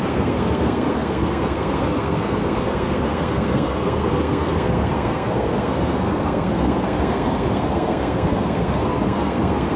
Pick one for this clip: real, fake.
fake